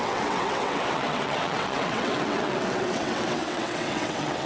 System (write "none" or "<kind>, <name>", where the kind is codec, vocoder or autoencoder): vocoder, WaveNeXt